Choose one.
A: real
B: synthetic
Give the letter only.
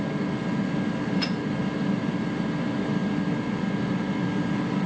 A